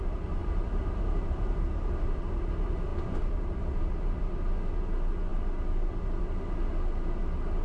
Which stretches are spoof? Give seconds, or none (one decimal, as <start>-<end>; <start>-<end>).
0.4-1.8